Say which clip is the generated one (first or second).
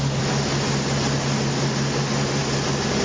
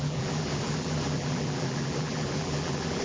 second